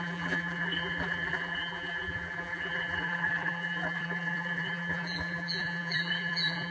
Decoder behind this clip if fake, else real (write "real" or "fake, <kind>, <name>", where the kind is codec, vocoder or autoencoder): fake, vocoder, BigVGAN v2